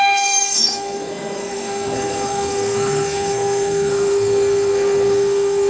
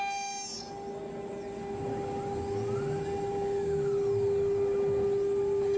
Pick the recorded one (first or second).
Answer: second